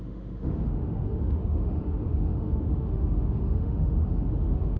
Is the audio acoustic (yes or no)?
no